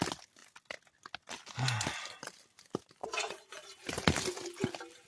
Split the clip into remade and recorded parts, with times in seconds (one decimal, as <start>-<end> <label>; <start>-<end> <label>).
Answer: 0.0-3.0 recorded; 3.0-3.7 remade; 3.7-5.1 recorded